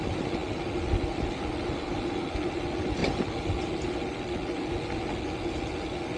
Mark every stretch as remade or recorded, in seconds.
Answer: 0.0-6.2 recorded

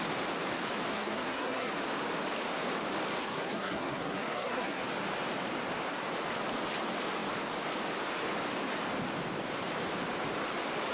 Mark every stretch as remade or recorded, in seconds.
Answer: 0.0-0.9 recorded; 0.9-1.7 remade; 1.7-3.2 recorded; 3.2-4.8 remade; 4.8-10.9 recorded

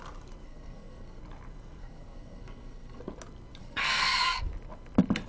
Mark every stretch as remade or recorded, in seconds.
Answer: 0.0-0.4 recorded; 0.4-1.2 remade; 1.2-1.8 recorded; 1.8-3.0 remade; 3.0-3.6 recorded; 3.6-4.4 remade; 4.4-5.3 recorded